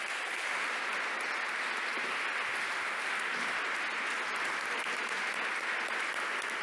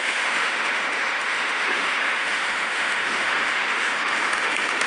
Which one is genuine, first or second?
first